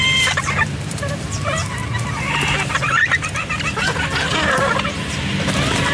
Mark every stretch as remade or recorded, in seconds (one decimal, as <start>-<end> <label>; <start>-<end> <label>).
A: 0.0-1.8 remade; 1.8-4.5 recorded; 4.5-5.9 remade